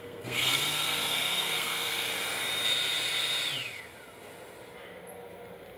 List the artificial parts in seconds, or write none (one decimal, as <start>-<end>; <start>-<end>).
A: 0.0-2.1